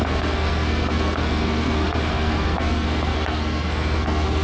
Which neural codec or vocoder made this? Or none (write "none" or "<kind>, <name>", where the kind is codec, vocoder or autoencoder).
codec, SNAC